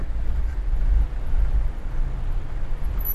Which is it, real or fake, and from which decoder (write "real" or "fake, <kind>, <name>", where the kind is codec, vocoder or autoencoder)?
real